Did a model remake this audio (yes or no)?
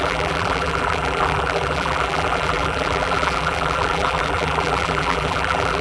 yes